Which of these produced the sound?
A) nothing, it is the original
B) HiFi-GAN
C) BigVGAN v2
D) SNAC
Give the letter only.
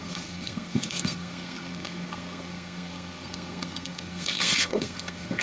D